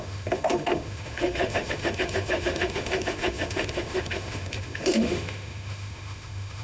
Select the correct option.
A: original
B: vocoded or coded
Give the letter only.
B